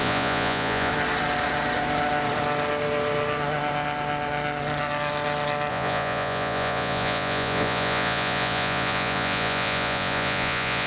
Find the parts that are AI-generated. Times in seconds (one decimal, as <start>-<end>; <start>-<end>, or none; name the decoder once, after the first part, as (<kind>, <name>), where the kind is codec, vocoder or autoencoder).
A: 0.0-0.9 (vocoder, Vocos); 5.7-10.9